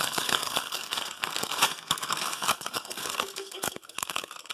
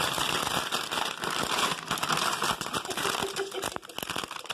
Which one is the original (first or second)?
second